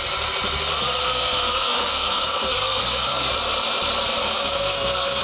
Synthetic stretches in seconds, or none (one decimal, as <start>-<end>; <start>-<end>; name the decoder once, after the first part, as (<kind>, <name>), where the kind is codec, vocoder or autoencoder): 1.0-3.3 (codec, SNAC); 4.2-5.2